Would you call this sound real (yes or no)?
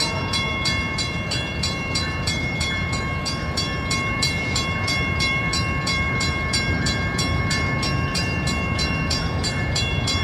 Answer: no